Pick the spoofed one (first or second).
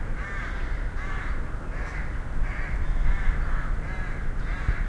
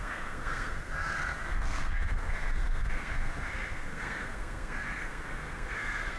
second